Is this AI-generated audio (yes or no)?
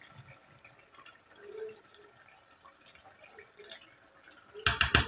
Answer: no